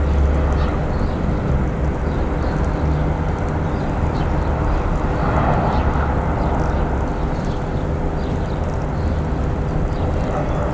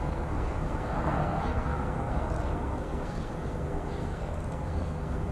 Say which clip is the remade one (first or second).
second